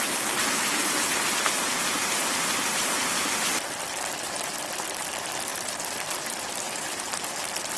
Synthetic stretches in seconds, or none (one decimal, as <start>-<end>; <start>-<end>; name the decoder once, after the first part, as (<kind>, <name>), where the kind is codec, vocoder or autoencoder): 0.4-4.5 (vocoder, BigVGAN v2); 5.5-7.1